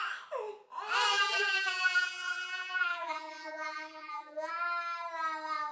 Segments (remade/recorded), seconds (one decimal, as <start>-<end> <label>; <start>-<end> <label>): 0.0-1.1 recorded; 1.1-4.5 remade; 4.5-5.7 recorded